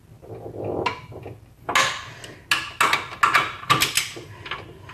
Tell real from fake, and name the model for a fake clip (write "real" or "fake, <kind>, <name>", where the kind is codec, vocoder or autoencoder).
real